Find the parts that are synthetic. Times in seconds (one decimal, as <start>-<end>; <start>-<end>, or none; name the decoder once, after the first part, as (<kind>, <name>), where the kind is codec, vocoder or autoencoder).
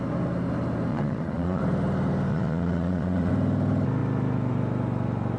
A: 0.9-1.6 (vocoder, Vocos); 2.3-3.3